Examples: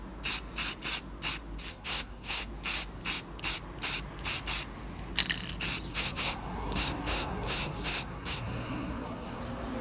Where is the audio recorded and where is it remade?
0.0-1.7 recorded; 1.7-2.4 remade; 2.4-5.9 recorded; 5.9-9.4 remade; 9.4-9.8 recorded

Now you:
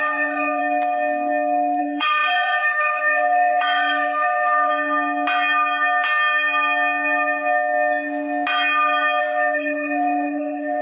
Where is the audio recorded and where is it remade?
0.0-0.6 remade; 0.6-1.8 recorded; 1.8-4.7 remade; 4.7-9.2 recorded; 9.2-10.8 remade